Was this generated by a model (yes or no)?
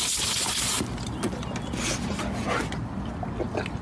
no